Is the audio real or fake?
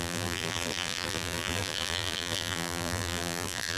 fake